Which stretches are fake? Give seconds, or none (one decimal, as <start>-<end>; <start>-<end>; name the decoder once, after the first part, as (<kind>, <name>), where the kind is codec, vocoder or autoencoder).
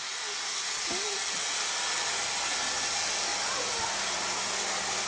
3.3-4.4 (vocoder, BigVGAN v2)